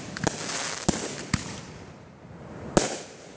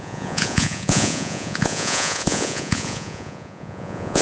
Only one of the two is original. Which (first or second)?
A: first